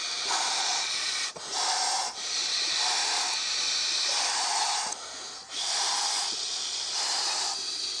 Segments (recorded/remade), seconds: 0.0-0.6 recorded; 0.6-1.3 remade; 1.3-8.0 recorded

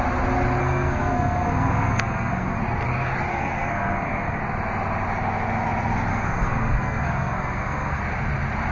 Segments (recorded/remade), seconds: 0.0-0.6 recorded; 0.6-2.6 remade; 2.6-3.3 recorded; 3.3-4.4 remade; 4.4-6.1 recorded; 6.1-8.0 remade; 8.0-8.7 recorded

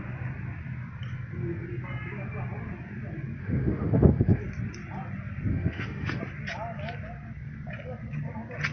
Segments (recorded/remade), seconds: 0.0-3.4 recorded; 3.4-4.4 remade; 4.4-5.5 recorded; 5.5-6.2 remade; 6.2-8.7 recorded

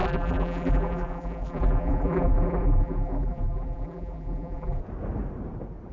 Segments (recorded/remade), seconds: 0.0-4.8 remade; 4.8-5.9 recorded

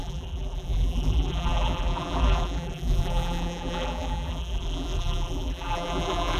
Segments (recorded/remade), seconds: 0.0-6.4 remade

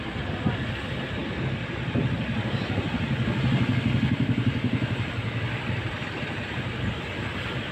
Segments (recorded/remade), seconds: 0.0-1.2 remade; 1.2-5.8 recorded; 5.8-7.7 remade

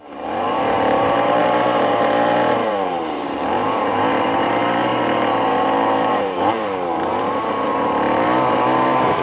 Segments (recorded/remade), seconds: 0.0-9.2 remade

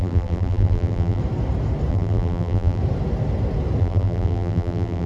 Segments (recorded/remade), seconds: 0.0-1.2 remade; 1.2-1.9 recorded; 1.9-2.8 remade; 2.8-3.8 recorded; 3.8-5.1 remade